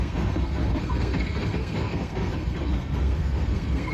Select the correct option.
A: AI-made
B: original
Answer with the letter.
A